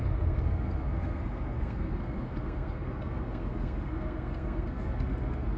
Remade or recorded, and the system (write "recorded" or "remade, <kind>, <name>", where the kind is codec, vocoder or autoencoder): remade, codec, SNAC